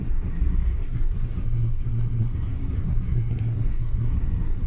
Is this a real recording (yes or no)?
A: no